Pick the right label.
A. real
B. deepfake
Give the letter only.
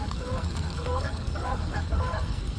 B